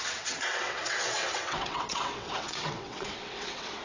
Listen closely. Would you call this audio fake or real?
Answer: fake